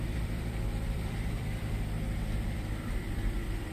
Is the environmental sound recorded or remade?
remade